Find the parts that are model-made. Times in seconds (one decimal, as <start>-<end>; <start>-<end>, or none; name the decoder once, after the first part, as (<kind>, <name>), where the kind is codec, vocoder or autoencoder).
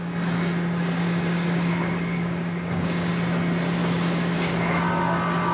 0.8-3.1 (codec, DAC); 3.8-4.7